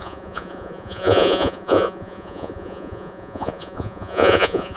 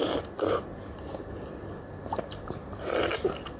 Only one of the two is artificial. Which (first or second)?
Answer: first